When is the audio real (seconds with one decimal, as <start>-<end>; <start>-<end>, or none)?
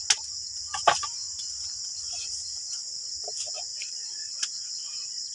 0.0-1.9; 3.0-3.7; 4.6-5.3